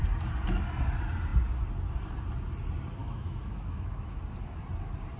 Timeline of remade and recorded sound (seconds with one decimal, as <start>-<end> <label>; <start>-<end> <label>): 0.0-3.0 recorded; 3.0-4.2 remade; 4.2-5.2 recorded